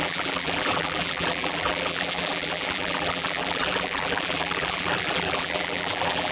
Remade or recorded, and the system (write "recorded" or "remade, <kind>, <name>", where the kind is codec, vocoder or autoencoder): remade, vocoder, BigVGAN v2